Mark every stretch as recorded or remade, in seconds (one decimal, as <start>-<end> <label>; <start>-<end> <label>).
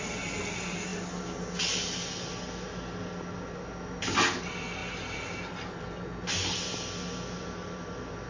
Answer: 0.0-8.3 recorded